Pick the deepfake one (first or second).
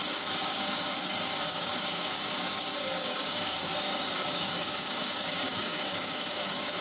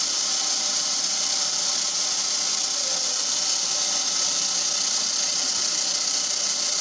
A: first